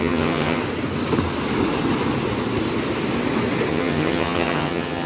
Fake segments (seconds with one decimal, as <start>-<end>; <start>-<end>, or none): 0.0-0.6; 3.7-5.1